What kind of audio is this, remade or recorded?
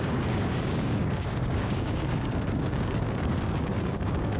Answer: remade